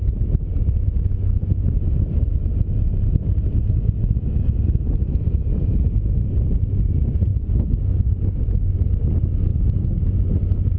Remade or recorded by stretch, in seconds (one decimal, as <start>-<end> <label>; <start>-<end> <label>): 0.0-7.3 recorded; 7.3-9.0 remade; 9.0-9.5 recorded; 9.5-10.0 remade; 10.0-10.8 recorded